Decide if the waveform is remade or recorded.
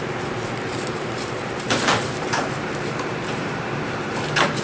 remade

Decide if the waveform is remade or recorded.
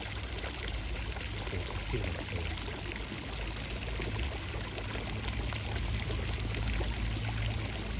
recorded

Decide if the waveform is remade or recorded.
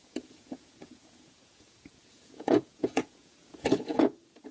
remade